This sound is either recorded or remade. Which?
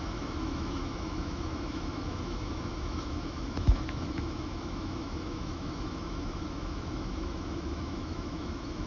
remade